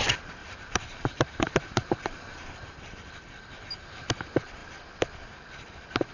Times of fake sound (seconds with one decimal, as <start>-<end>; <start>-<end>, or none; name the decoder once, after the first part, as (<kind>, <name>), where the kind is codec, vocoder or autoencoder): 0.4-4.1 (vocoder, BigVGAN v2)